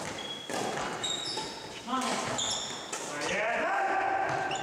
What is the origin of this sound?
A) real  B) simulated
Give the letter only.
A